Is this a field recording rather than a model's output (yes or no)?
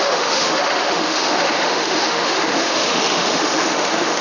no